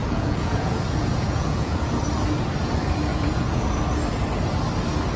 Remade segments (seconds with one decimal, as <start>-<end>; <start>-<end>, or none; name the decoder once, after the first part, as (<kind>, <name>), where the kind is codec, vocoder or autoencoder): 0.0-1.9 (vocoder, Vocos); 3.1-3.7